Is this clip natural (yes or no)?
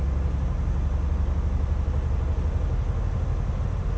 yes